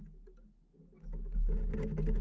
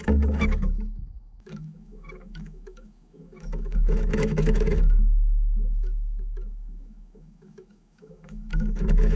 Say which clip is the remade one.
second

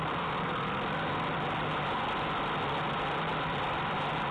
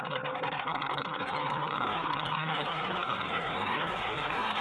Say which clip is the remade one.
second